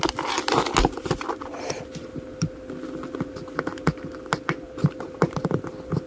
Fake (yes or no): no